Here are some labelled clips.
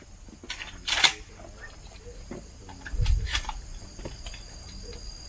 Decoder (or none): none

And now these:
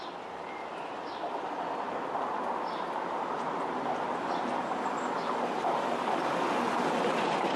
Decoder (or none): none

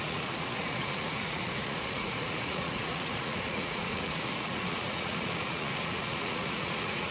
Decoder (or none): vocoder, Vocos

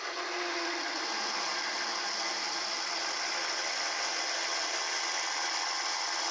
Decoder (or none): none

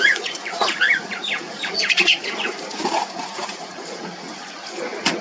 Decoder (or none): vocoder, Vocos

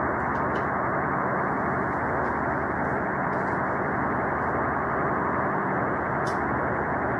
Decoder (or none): none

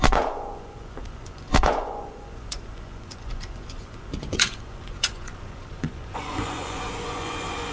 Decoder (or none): vocoder, Vocos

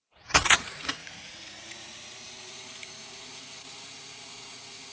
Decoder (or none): vocoder, Vocos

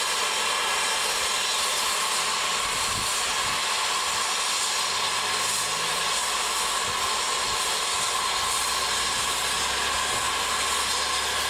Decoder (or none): none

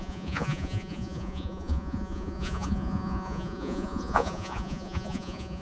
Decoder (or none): vocoder, Vocos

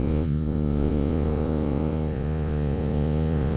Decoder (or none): vocoder, Vocos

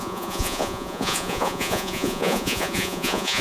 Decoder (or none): vocoder, Vocos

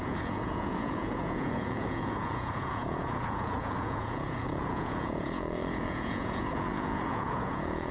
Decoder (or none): vocoder, Vocos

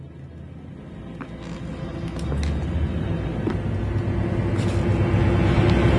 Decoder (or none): none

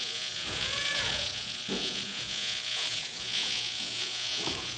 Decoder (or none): vocoder, Vocos